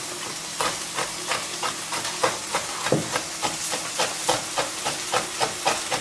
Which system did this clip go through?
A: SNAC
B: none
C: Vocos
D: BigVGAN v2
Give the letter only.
B